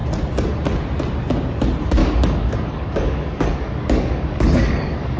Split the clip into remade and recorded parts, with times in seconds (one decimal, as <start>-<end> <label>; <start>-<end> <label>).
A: 0.0-2.0 recorded; 2.0-5.2 remade